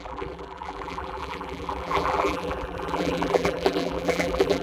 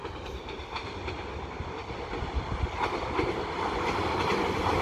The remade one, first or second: first